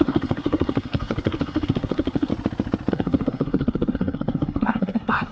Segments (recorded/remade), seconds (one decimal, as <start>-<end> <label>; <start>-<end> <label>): 0.0-2.3 remade; 2.3-2.9 recorded; 2.9-5.3 remade